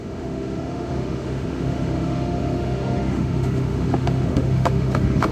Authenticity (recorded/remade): remade